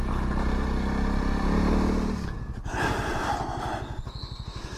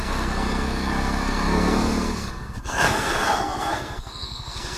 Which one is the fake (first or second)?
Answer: second